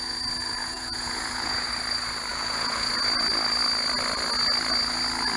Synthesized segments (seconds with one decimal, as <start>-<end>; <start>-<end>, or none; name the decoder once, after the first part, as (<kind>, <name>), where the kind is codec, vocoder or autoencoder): 0.6-1.7 (vocoder, Vocos); 2.3-2.9